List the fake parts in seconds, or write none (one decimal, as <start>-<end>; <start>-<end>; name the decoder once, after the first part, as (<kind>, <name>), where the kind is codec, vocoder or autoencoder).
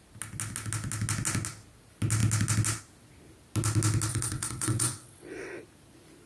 4.1-5.6 (vocoder, WaveNeXt)